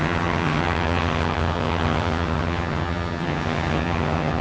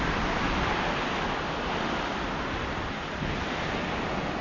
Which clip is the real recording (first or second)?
second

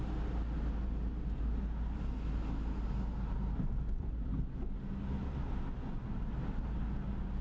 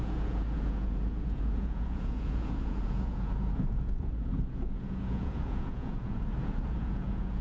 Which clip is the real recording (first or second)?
first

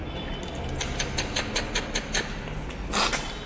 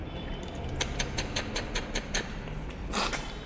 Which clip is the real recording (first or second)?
first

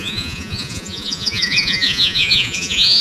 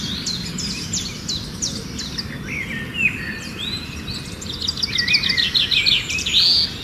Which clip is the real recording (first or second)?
second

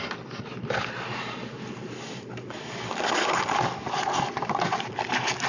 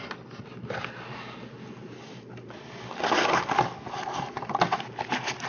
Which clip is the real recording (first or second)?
second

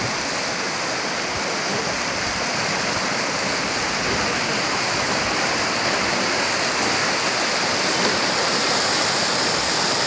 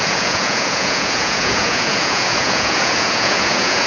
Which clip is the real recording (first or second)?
first